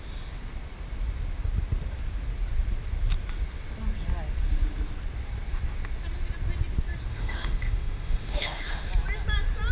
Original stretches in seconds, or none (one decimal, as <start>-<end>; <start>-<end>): 0.0-7.1; 8.9-9.7